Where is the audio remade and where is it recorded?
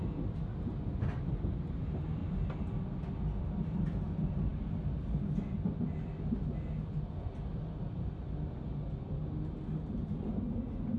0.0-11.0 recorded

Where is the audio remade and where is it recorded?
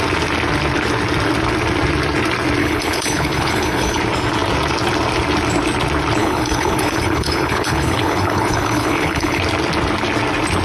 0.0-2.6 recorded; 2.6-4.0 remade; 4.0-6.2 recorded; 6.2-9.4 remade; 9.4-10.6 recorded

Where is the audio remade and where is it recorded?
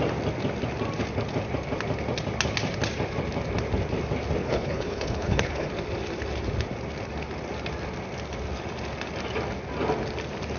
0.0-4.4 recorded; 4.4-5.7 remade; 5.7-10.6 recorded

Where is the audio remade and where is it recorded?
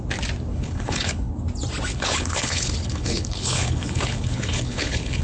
0.0-0.5 recorded; 0.5-1.3 remade; 1.3-1.9 recorded; 1.9-5.2 remade